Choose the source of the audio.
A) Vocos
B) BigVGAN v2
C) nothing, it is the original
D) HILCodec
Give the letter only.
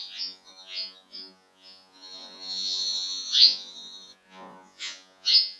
A